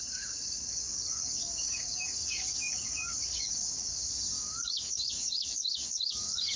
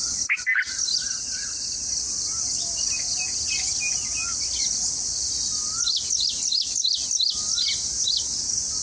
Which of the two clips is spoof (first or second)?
first